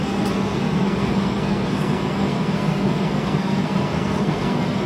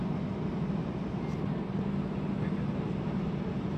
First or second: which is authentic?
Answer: second